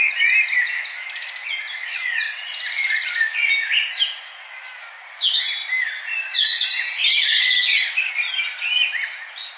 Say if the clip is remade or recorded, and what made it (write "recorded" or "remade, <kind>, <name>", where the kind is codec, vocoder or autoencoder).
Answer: recorded